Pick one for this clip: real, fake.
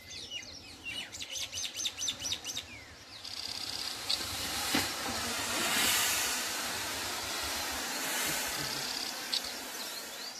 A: fake